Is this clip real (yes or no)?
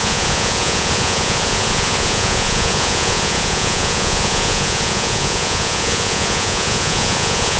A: no